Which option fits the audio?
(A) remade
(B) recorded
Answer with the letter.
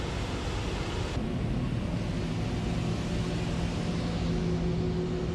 B